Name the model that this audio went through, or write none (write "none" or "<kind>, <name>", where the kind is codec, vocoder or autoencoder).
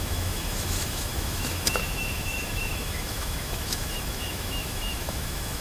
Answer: autoencoder, DAC-VAE